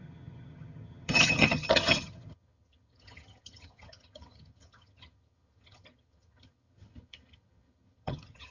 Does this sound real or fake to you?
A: fake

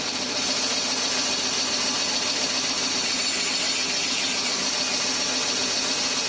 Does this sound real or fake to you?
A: real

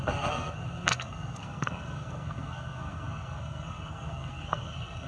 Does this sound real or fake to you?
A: fake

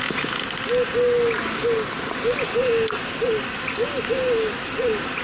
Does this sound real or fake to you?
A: real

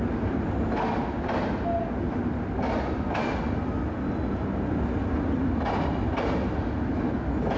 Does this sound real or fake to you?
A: real